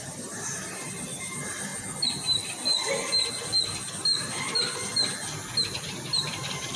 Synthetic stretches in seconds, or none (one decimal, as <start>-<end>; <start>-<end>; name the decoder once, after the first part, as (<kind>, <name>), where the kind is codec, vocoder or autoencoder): 0.0-1.7 (vocoder, BigVGAN v2); 5.8-6.8